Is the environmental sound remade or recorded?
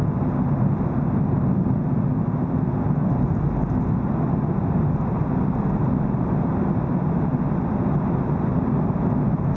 recorded